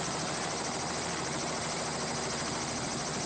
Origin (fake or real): real